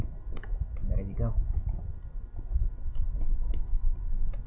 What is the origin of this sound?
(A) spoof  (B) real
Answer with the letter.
B